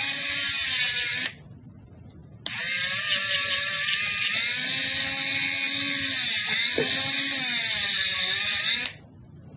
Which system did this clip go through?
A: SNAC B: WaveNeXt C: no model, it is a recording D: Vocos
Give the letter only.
C